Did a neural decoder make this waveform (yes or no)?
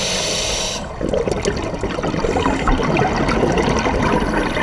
no